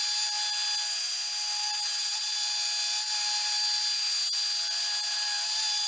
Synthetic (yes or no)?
no